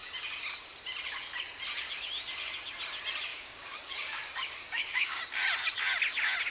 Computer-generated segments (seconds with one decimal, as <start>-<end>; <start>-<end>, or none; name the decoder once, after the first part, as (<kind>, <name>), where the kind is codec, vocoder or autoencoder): 3.3-5.2 (codec, DAC)